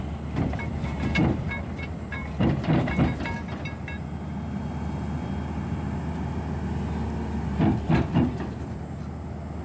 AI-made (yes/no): no